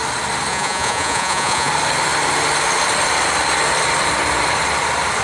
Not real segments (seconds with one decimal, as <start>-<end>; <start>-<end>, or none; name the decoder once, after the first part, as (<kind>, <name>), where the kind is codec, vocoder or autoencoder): 0.5-1.7 (vocoder, Vocos)